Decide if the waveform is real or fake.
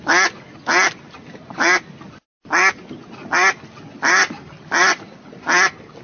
real